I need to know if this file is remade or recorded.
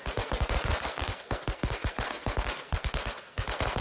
remade